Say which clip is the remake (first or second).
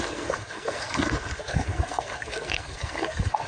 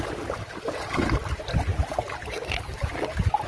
first